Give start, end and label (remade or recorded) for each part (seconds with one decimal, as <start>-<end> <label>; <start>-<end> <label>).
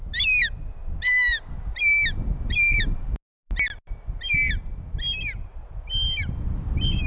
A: 0.0-7.1 recorded